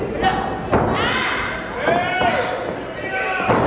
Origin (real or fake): real